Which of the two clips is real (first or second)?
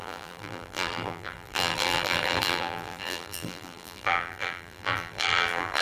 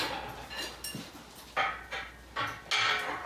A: second